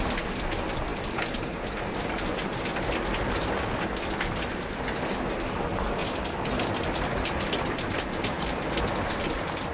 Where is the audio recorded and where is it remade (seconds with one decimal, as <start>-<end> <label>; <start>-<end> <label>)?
0.0-9.7 recorded